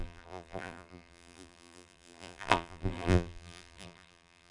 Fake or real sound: fake